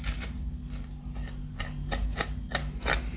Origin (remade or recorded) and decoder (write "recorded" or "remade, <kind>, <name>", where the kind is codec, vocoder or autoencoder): recorded